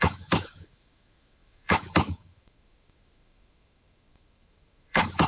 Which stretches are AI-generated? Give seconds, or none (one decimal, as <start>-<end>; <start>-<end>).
0.0-5.3